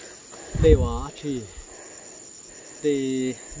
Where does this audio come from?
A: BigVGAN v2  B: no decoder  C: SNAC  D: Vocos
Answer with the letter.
B